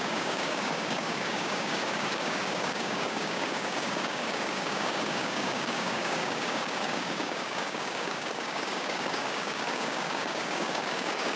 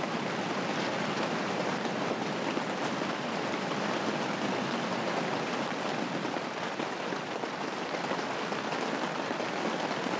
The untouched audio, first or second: second